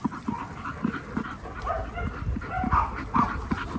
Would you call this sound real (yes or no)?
no